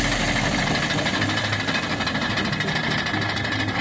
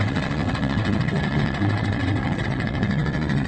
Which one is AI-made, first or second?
second